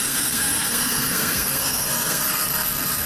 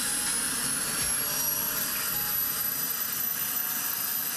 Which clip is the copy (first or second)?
first